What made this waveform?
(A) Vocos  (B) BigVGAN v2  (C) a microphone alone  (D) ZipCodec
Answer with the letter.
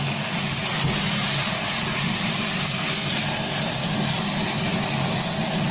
C